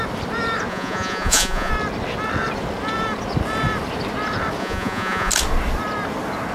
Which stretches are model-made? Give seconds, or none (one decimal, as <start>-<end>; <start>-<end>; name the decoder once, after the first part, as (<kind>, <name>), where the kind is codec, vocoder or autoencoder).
0.7-1.7 (vocoder, Vocos); 4.6-5.3